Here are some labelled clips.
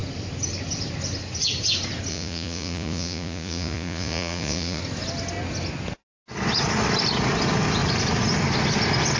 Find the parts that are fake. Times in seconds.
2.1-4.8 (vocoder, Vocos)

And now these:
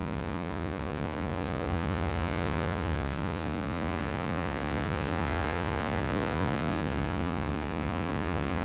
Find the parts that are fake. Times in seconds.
0.0-8.6 (vocoder, Vocos)

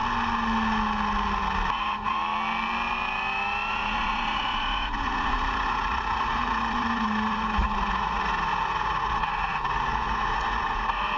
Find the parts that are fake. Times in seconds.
1.7-2.2 (vocoder, Vocos); 3.7-11.2

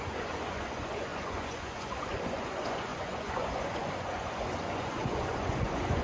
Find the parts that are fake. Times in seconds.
0.0-6.0 (vocoder, Vocos)

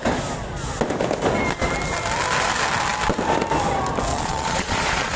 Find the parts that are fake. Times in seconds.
4.1-5.2 (vocoder, Vocos)

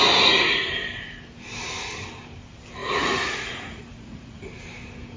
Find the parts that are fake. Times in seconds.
2.8-4.4 (vocoder, Vocos)

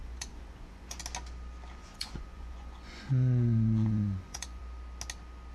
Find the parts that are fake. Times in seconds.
0.0-1.0 (vocoder, Vocos); 1.8-4.6

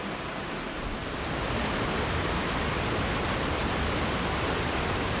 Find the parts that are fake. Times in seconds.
none